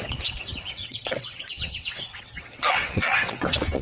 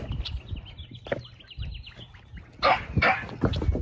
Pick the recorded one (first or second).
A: second